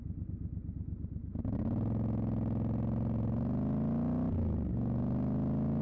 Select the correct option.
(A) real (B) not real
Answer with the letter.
A